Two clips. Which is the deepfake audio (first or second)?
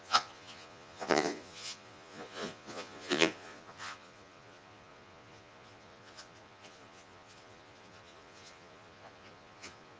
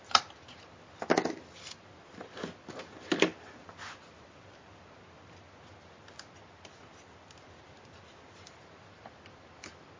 first